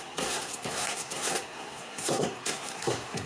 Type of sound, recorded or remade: remade